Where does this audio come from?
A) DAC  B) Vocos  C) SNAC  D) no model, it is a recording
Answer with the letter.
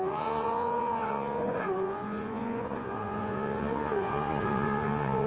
B